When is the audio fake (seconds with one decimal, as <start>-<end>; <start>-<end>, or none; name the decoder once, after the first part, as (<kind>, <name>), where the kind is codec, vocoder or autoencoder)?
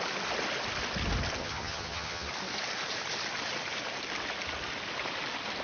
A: 1.4-2.3 (vocoder, HiFi-GAN)